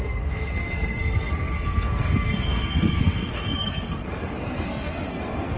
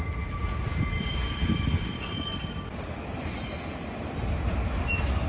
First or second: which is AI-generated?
first